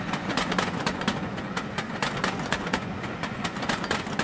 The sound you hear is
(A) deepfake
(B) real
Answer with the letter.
A